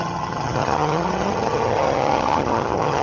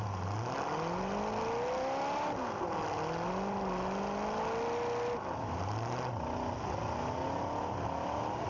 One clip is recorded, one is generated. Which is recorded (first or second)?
second